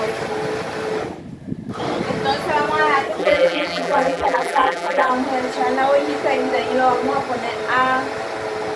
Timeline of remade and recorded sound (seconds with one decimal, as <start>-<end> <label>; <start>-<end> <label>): 0.0-3.2 recorded; 3.2-5.1 remade; 5.1-8.8 recorded